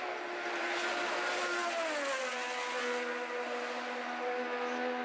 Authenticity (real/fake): real